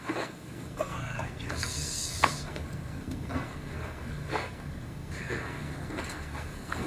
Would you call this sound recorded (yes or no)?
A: no